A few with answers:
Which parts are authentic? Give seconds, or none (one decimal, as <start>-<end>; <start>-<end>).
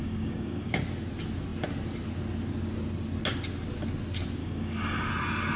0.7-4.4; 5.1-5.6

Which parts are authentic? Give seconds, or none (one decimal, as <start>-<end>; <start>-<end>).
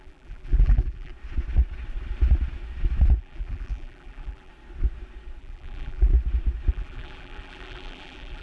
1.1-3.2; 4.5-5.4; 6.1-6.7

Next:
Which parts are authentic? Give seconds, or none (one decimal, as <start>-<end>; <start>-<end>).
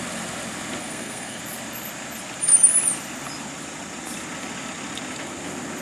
0.0-0.8; 1.4-5.8